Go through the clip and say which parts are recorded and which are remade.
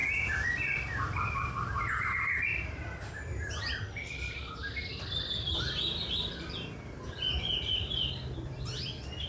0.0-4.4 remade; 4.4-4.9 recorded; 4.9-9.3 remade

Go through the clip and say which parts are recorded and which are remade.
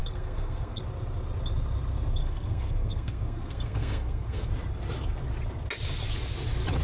0.0-0.8 remade; 0.8-2.2 recorded; 2.2-4.5 remade; 4.5-6.8 recorded